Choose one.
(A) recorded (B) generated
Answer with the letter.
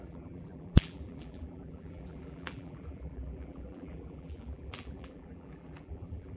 B